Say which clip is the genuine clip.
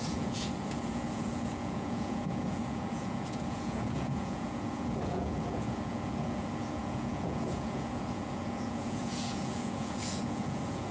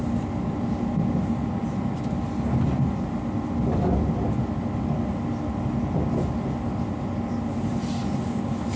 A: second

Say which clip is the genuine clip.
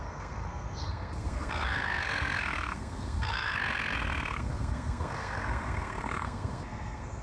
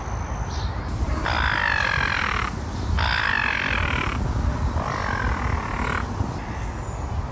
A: second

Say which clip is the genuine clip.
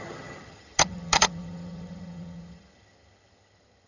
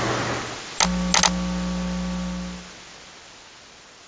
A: second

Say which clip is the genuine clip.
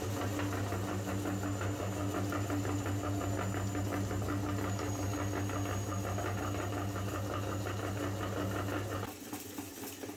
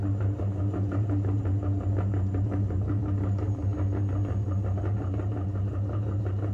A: first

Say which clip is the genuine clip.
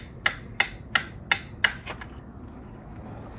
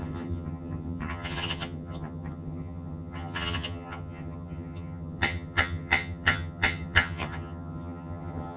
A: first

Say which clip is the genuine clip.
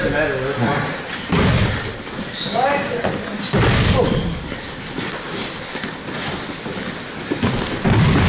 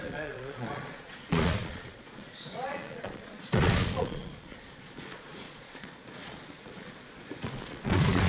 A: first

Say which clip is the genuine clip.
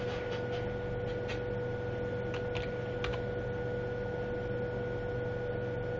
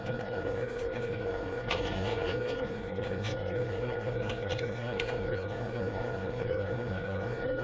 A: first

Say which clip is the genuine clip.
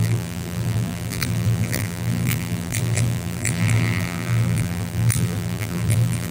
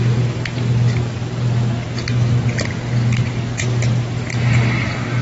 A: second